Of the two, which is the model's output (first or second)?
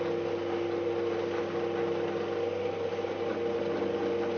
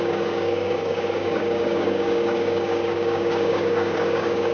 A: second